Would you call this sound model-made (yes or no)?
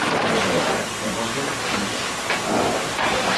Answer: no